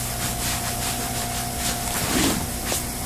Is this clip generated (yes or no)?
no